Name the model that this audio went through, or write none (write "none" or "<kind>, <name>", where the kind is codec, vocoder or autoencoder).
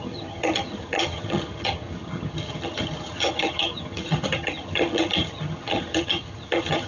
vocoder, HiFi-GAN